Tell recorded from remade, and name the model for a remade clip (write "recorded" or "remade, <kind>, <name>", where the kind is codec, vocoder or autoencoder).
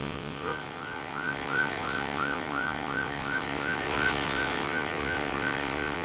remade, vocoder, WaveNeXt